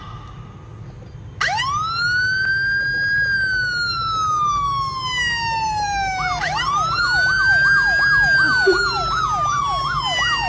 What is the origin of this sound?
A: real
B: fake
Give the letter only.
A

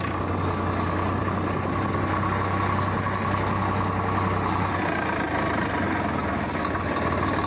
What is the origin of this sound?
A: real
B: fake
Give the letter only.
A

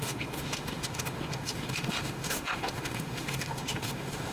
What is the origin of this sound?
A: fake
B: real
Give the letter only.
A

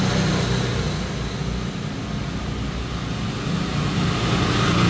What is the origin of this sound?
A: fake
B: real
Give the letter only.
B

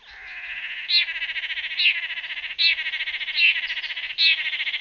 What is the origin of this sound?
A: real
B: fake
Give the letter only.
A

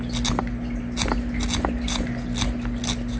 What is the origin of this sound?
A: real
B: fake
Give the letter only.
A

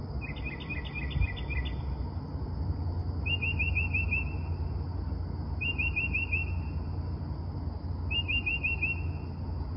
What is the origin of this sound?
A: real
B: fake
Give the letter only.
A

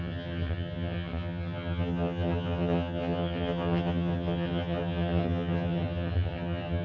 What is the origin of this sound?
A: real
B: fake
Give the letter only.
B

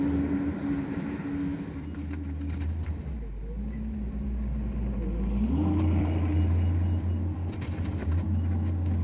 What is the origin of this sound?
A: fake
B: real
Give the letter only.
B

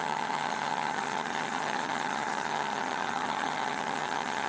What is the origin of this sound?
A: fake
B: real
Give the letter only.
A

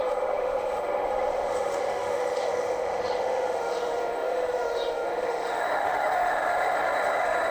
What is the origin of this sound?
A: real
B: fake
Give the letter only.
B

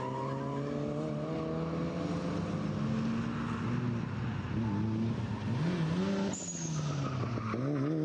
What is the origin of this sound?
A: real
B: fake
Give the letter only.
A